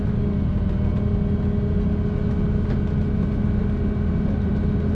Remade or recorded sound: recorded